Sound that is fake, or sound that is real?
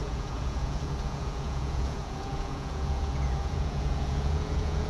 fake